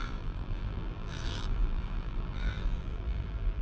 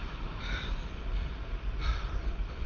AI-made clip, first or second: first